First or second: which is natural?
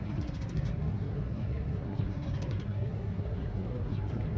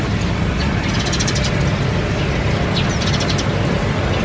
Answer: second